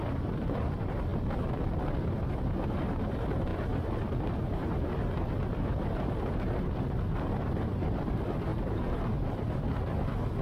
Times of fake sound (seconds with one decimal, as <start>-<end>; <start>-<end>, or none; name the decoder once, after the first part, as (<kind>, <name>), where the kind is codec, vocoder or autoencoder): 0.0-1.1 (vocoder, BigVGAN v2); 1.9-10.4